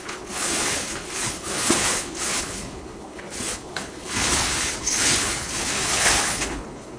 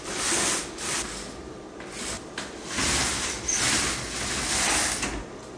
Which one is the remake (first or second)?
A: first